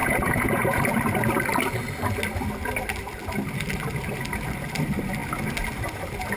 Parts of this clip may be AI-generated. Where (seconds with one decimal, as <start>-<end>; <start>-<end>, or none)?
0.0-0.8